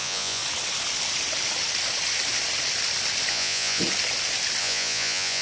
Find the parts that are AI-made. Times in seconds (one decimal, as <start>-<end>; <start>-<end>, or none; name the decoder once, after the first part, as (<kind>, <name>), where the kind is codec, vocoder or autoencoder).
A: 0.0-0.4 (vocoder, Vocos); 3.3-3.8; 4.6-5.4